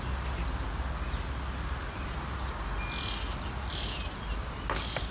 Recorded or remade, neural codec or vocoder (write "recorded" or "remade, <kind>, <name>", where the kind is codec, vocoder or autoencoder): recorded